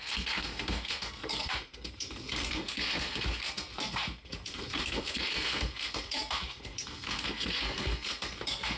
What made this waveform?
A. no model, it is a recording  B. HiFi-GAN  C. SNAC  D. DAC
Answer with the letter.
C